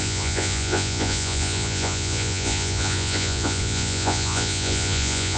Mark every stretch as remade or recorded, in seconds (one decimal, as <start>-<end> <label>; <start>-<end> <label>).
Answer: 0.0-5.4 remade